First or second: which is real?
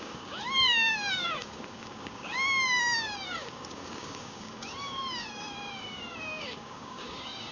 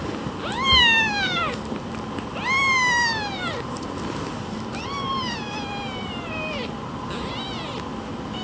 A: second